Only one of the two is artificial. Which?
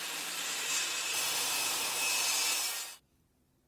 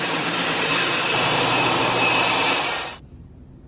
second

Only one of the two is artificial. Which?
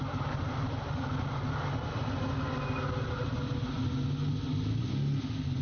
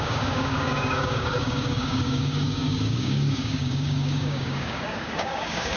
second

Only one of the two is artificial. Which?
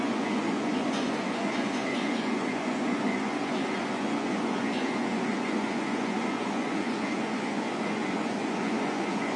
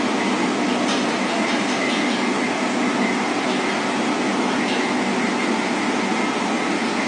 first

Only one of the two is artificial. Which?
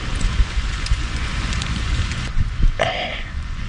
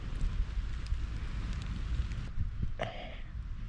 first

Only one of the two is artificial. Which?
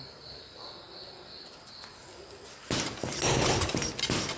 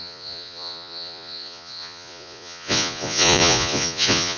second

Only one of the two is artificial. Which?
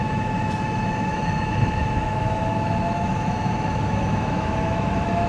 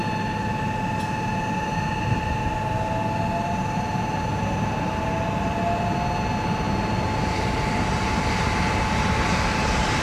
first